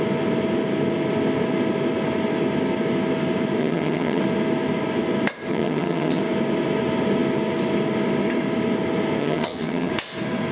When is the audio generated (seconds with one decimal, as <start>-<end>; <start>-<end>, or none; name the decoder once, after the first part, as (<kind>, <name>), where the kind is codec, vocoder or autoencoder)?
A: 3.6-4.2 (vocoder, HiFi-GAN); 5.5-6.2; 9.2-9.9